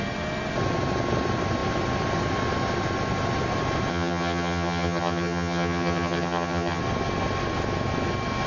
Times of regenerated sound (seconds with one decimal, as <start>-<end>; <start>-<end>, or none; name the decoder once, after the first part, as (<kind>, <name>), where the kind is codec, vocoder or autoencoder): 3.9-6.8 (vocoder, HiFi-GAN)